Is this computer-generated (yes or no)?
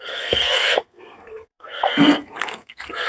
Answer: yes